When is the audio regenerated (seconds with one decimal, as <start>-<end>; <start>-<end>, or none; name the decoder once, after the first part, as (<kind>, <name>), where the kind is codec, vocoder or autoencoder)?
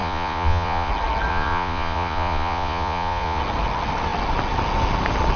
0.0-0.9 (vocoder, Vocos); 1.3-3.4